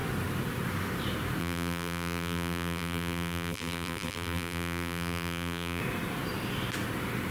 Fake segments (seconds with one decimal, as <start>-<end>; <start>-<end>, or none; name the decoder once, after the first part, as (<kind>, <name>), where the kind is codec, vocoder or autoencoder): 1.4-5.8 (vocoder, BigVGAN v2)